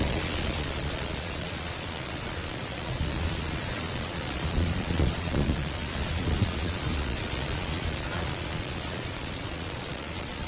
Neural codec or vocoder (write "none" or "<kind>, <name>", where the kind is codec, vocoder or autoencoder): vocoder, Vocos